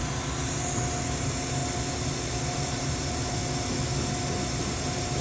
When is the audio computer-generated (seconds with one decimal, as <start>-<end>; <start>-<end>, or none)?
1.2-1.6; 2.4-3.4; 4.6-5.2

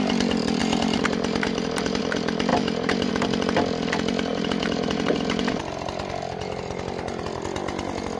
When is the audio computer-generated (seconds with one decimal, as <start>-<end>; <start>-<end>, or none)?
0.6-2.0; 2.5-3.1; 4.3-5.6